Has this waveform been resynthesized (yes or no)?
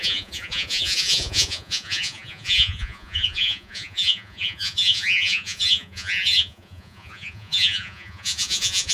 yes